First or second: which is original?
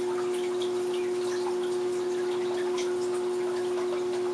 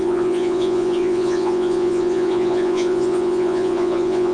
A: first